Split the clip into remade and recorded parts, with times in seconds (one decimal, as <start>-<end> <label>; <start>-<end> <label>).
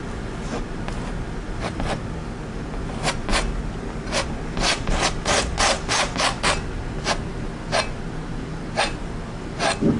0.0-10.0 recorded